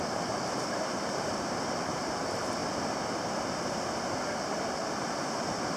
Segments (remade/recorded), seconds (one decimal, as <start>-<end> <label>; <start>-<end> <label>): 0.0-2.6 remade; 2.6-5.8 recorded